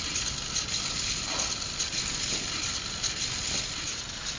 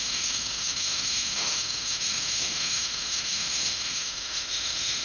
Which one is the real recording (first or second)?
first